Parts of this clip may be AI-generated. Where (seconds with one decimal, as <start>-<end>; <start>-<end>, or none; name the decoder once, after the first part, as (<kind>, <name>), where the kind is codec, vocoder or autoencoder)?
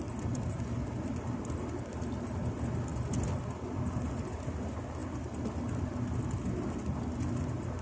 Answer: none